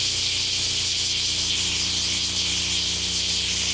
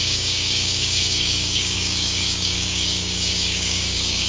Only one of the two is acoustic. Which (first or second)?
first